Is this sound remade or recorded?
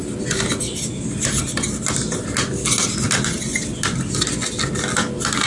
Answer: recorded